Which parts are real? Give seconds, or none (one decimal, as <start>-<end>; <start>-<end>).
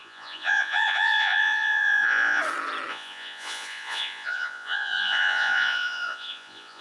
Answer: 2.4-2.9